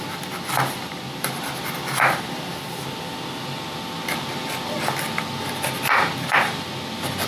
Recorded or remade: recorded